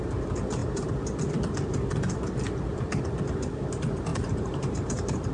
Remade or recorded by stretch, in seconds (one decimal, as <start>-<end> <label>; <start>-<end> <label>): 0.0-4.1 recorded; 4.1-5.3 remade